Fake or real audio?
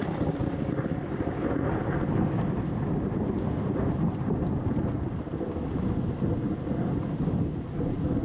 real